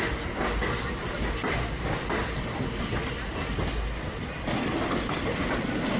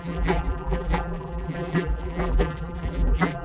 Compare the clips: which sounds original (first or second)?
first